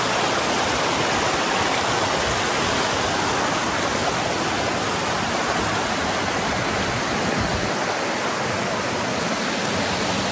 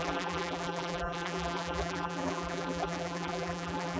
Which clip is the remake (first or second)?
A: second